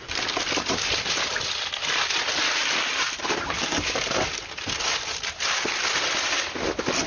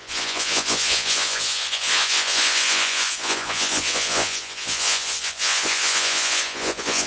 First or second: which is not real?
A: second